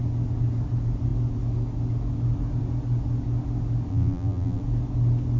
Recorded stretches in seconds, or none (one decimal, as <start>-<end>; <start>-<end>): 0.0-3.9; 4.6-5.4